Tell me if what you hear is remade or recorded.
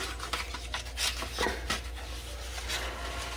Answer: recorded